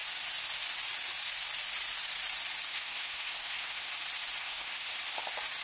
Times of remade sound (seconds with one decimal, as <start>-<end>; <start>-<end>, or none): 2.7-3.9; 4.4-5.0